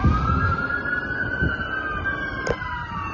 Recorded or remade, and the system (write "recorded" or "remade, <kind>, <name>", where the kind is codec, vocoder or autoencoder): recorded